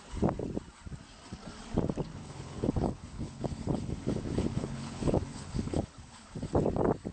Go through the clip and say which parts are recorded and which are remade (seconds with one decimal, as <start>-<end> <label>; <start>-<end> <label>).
0.0-2.2 recorded; 2.2-6.5 remade; 6.5-7.1 recorded